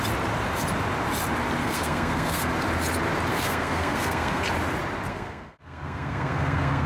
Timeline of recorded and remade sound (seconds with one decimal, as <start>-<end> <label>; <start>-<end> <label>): 0.0-1.6 recorded; 1.6-2.5 remade; 2.5-3.3 recorded; 3.3-4.4 remade; 4.4-5.1 recorded; 5.1-6.9 remade